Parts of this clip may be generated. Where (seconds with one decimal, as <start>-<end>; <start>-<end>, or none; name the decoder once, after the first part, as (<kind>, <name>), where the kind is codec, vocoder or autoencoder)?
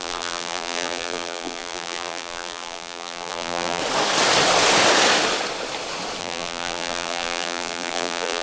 0.0-3.8 (vocoder, BigVGAN v2); 6.2-8.4